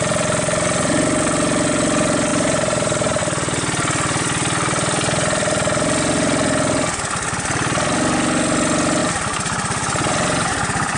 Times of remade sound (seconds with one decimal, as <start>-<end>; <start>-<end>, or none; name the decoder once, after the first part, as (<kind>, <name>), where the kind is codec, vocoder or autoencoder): 2.3-3.2 (vocoder, BigVGAN v2); 9.0-11.0